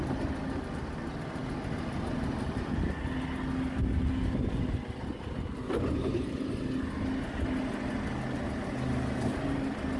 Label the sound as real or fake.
real